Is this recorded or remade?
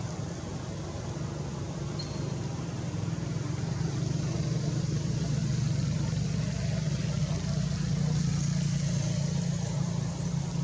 recorded